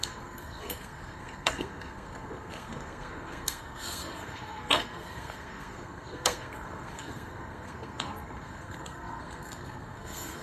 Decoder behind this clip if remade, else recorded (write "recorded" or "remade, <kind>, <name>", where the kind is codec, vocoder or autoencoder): remade, codec, SNAC